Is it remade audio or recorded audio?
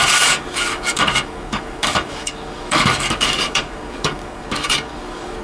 remade